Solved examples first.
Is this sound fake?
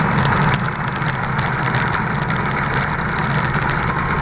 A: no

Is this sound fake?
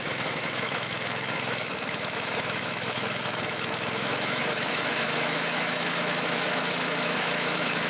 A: yes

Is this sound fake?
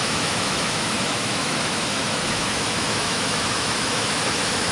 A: yes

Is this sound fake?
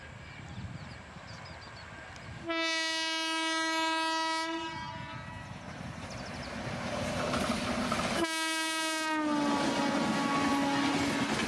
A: no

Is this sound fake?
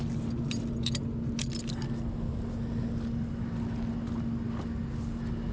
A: no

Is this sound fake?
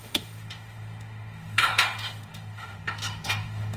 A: yes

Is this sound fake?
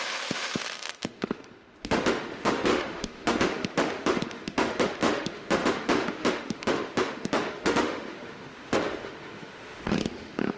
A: yes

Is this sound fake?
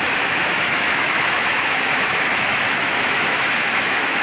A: yes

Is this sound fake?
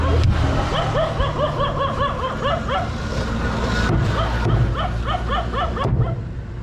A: no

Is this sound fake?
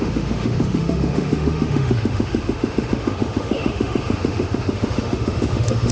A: yes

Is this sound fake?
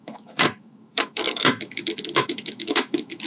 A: yes